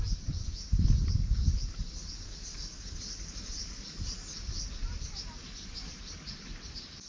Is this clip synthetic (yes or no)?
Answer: no